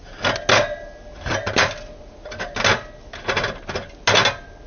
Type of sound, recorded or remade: recorded